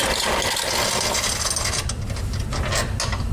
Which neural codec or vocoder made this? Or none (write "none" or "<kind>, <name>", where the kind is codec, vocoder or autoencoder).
none